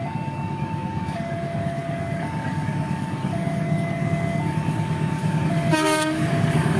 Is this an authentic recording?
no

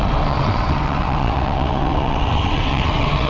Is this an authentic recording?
no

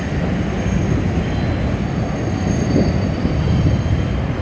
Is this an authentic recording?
yes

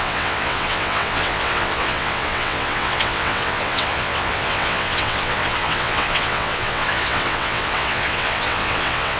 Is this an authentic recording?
no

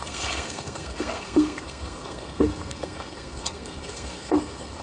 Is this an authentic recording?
no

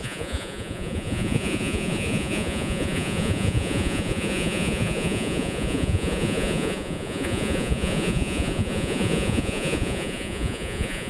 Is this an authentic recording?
no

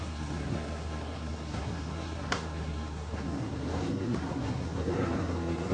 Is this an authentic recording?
no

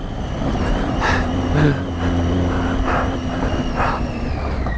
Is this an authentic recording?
yes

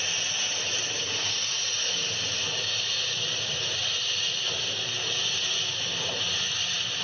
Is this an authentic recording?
yes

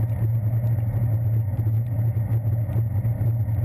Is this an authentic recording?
yes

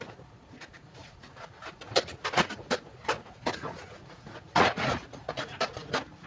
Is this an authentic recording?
no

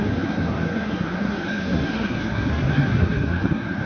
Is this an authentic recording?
no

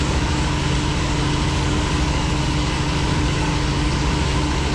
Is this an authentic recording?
no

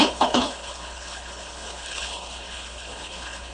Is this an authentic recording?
no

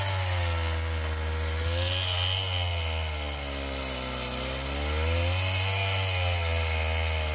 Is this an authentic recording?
yes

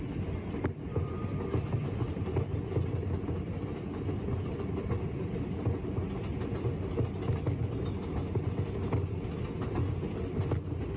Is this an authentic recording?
yes